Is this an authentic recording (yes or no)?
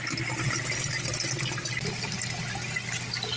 yes